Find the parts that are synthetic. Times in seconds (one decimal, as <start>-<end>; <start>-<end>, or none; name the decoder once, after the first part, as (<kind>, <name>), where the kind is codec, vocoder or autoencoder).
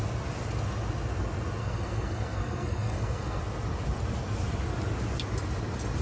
1.6-3.4 (codec, SNAC)